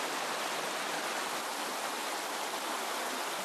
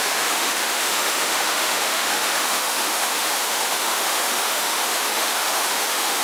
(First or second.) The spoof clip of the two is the second